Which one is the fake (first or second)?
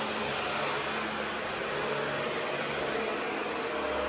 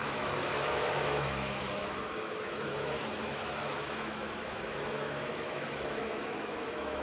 second